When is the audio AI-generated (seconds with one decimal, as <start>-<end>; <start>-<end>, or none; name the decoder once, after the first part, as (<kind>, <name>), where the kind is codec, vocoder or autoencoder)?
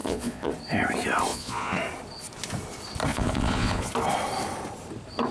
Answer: 0.0-0.5 (vocoder, Vocos); 1.3-1.8; 3.1-3.9